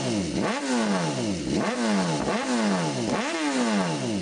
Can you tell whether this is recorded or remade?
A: recorded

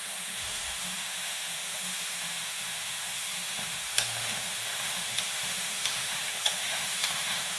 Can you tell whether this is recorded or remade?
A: remade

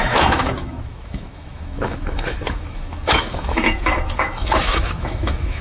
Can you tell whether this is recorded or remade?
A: remade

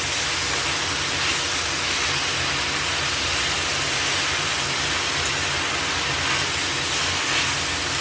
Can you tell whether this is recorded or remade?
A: recorded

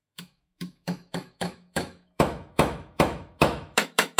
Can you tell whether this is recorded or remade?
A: remade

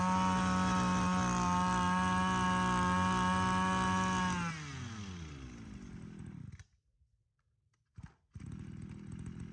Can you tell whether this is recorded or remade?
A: recorded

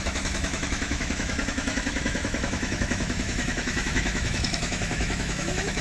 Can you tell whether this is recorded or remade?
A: remade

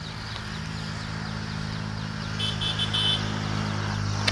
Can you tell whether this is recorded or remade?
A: recorded